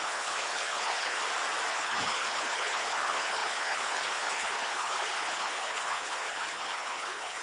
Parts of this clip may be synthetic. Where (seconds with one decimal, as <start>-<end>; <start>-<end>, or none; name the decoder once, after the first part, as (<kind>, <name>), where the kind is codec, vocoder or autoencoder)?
0.0-1.2 (codec, HILCodec); 1.7-7.4